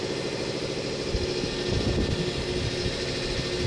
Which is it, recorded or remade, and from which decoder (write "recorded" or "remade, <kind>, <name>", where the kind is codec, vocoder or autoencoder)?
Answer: recorded